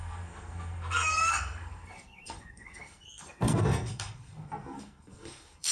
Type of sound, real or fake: fake